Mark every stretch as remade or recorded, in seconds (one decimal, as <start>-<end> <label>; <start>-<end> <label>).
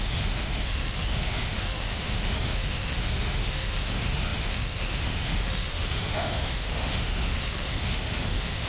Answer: 0.0-8.7 remade